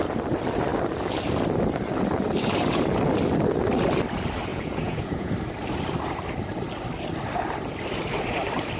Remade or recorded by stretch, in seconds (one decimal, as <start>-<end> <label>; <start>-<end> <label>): 0.0-4.5 recorded; 4.5-5.3 remade; 5.3-8.8 recorded